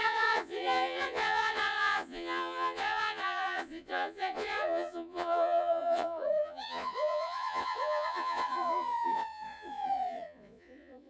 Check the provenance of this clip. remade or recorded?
remade